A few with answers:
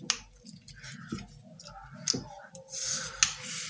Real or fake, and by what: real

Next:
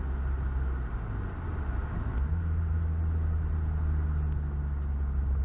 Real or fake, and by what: real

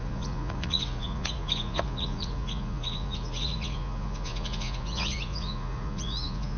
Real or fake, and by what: fake, vocoder, Vocos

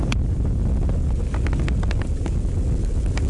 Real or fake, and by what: real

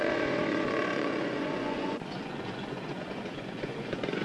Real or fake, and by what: fake, vocoder, Vocos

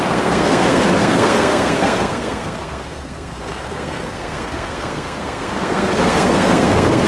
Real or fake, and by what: fake, codec, SNAC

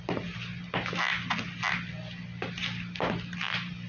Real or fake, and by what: real